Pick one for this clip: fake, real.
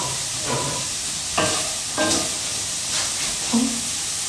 real